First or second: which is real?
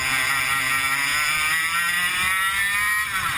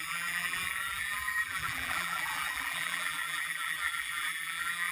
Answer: first